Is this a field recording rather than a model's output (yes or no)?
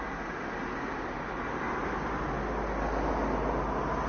yes